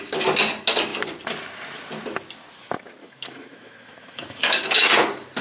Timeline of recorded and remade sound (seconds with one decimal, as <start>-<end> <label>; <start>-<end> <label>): 0.0-3.0 recorded; 3.0-4.9 remade; 4.9-5.4 recorded